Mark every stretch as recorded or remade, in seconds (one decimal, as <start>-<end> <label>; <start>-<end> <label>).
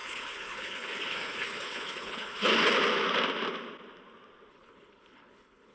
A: 0.0-2.5 remade; 2.5-4.5 recorded; 4.5-5.7 remade